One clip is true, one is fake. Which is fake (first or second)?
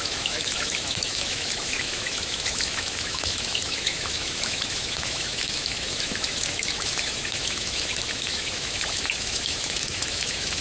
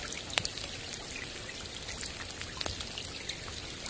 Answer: first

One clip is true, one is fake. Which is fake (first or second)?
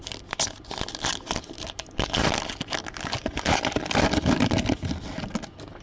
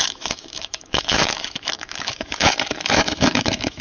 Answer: second